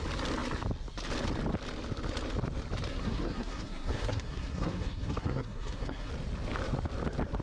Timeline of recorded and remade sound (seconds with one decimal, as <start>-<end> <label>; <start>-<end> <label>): 0.0-2.9 recorded; 2.9-6.1 remade; 6.1-7.4 recorded